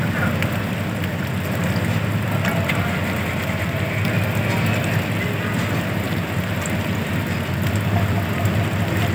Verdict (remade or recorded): recorded